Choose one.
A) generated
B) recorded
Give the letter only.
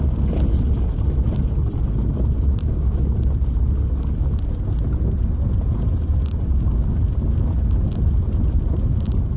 B